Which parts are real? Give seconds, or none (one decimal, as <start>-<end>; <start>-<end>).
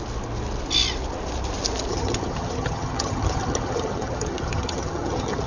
0.0-1.9